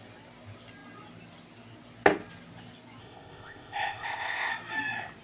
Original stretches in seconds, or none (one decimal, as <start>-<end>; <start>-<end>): 0.0-3.0; 4.5-5.2